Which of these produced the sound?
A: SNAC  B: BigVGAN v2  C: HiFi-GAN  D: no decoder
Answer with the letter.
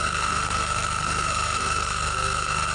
A